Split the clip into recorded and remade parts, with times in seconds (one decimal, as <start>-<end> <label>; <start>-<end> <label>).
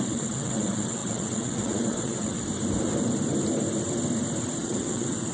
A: 0.0-2.4 remade; 2.4-4.6 recorded; 4.6-5.3 remade